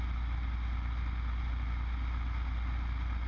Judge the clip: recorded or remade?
recorded